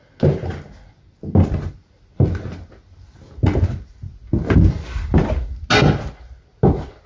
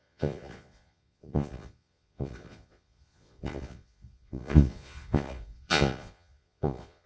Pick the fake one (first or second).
second